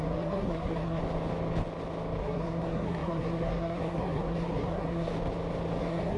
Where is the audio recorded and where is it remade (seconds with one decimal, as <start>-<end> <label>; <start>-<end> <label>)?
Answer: 0.0-1.0 remade; 1.0-2.2 recorded; 2.2-5.1 remade; 5.1-5.8 recorded; 5.8-6.2 remade